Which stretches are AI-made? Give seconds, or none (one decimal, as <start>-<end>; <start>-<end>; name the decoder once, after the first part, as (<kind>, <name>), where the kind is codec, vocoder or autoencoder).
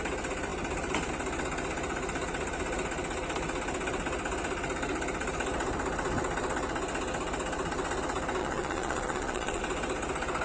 8.4-9.6 (vocoder, Vocos)